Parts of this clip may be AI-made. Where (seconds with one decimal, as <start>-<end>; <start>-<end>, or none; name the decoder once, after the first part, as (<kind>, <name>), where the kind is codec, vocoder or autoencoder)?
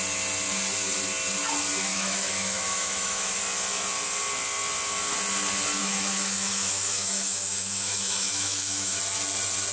1.9-3.4 (autoencoder, DAC-VAE); 5.8-9.0